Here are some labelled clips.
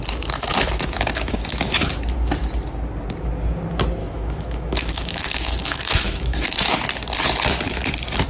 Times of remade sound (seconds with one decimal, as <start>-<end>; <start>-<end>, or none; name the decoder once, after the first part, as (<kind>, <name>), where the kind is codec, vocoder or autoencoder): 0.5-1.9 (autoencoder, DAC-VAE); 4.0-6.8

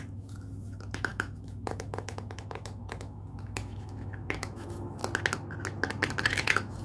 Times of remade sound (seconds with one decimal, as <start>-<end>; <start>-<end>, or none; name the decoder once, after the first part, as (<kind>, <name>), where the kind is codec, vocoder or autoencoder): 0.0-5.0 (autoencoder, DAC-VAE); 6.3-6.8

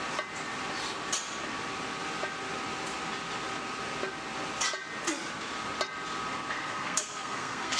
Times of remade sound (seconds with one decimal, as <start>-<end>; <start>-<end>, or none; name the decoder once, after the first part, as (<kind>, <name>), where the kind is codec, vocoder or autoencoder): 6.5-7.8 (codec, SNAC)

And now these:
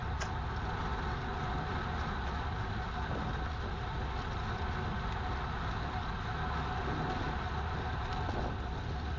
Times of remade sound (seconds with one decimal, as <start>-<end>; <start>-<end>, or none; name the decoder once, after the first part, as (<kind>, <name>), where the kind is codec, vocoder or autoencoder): none